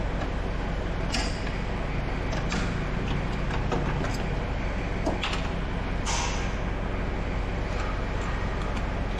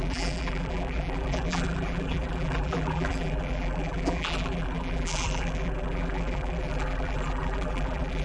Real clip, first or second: first